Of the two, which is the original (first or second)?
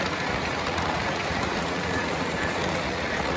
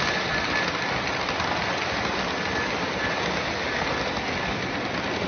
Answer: second